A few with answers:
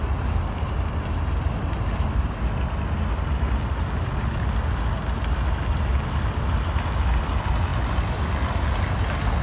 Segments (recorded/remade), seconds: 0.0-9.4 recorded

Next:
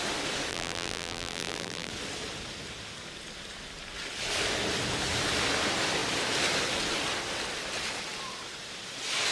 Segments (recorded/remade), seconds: 0.0-0.5 recorded; 0.5-1.9 remade; 1.9-9.3 recorded

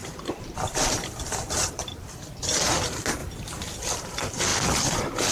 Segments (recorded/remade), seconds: 0.0-3.2 recorded; 3.2-3.9 remade; 3.9-5.3 recorded

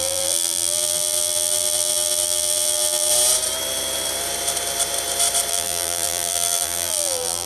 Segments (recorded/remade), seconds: 0.0-3.1 remade; 3.1-5.5 recorded; 5.5-7.5 remade

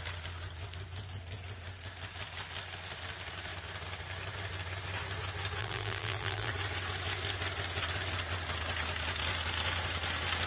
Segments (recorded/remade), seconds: 0.0-5.6 recorded; 5.6-6.5 remade; 6.5-10.5 recorded

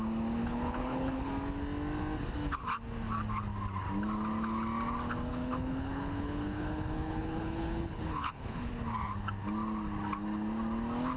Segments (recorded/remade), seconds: 0.0-0.4 recorded; 0.4-1.3 remade; 1.3-5.3 recorded; 5.3-8.7 remade; 8.7-11.2 recorded

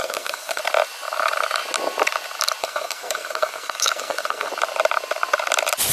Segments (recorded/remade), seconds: 0.0-0.6 remade; 0.6-2.6 recorded; 2.6-4.5 remade; 4.5-5.9 recorded

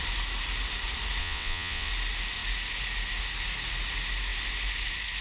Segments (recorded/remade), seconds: 0.0-1.2 recorded; 1.2-1.9 remade; 1.9-5.2 recorded